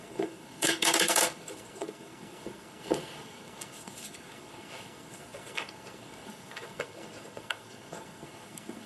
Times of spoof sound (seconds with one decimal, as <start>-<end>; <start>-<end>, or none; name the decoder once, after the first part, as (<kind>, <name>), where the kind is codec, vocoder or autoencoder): 0.0-8.9 (codec, SNAC)